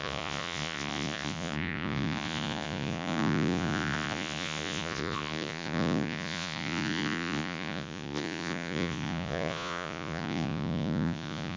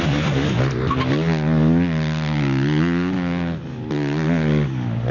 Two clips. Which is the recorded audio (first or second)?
second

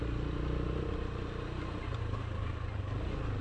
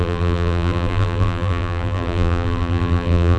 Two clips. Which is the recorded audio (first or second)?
first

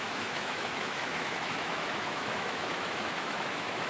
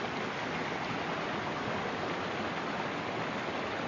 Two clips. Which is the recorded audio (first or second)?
second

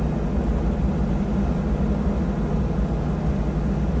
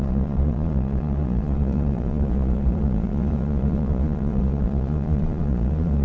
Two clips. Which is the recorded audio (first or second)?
first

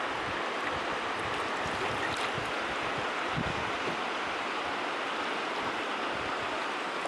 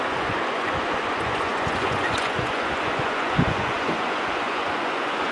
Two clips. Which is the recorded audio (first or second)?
first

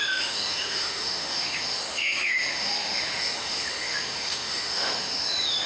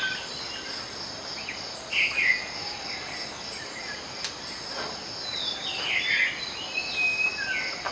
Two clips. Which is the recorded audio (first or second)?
second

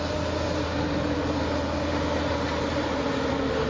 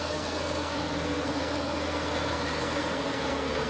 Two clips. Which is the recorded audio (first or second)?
first